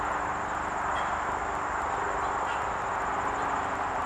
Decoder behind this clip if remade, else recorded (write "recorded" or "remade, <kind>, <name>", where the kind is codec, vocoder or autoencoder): recorded